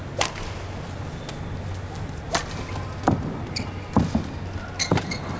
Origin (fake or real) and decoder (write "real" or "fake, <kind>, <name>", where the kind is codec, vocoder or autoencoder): real